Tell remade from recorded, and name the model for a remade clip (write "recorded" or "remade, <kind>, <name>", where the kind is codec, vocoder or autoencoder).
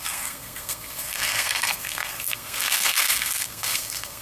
remade, codec, SNAC